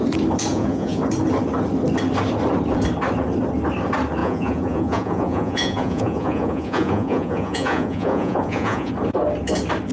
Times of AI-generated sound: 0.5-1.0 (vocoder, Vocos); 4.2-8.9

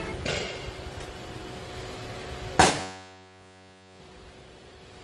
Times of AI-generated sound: 2.8-4.0 (vocoder, Vocos)

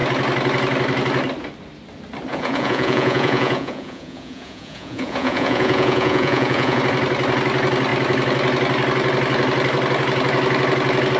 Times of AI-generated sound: 2.3-6.8 (vocoder, Vocos)